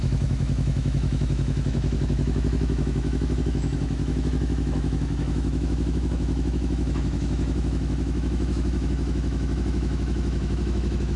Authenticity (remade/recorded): remade